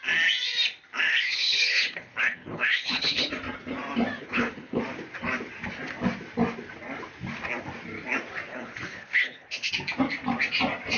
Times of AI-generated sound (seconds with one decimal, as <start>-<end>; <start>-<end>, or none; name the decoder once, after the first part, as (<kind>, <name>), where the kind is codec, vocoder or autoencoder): 1.1-3.3 (codec, HILCodec); 4.2-4.8; 8.5-9.7